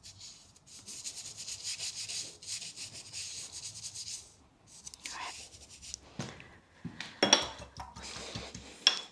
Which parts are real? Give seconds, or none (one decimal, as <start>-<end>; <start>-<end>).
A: 0.0-9.1